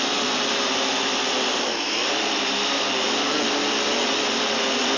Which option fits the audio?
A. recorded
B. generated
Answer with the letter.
A